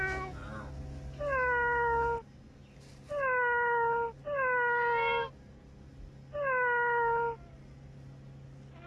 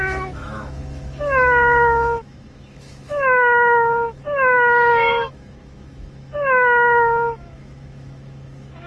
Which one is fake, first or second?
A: second